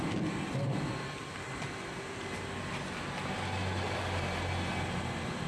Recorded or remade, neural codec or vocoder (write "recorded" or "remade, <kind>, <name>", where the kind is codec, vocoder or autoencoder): recorded